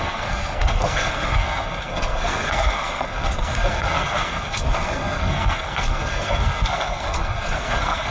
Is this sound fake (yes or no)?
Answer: yes